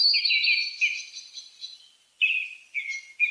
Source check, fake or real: real